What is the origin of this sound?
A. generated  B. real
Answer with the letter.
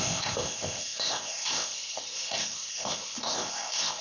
A